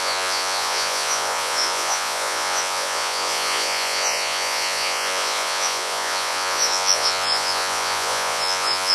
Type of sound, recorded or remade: remade